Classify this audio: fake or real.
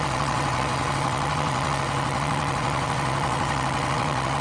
fake